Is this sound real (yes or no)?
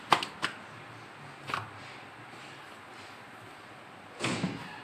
yes